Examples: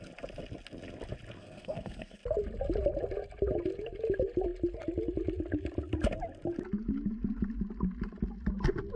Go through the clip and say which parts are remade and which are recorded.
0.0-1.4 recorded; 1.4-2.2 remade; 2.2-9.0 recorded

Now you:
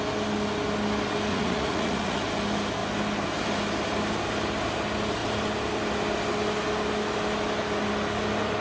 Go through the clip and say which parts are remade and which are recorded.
0.0-1.3 recorded; 1.3-2.2 remade; 2.2-8.6 recorded

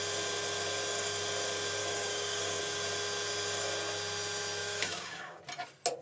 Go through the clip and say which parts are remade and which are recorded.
0.0-1.8 recorded; 1.8-2.6 remade; 2.6-4.6 recorded; 4.6-5.4 remade; 5.4-6.0 recorded